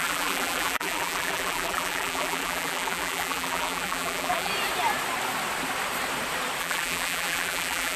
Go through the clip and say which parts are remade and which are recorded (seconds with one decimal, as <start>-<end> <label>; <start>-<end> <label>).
0.0-4.5 remade; 4.5-6.6 recorded; 6.6-8.0 remade